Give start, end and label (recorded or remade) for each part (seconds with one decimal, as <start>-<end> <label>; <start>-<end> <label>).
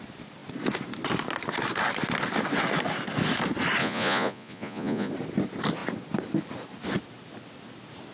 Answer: 0.0-3.8 recorded; 3.8-5.1 remade; 5.1-8.1 recorded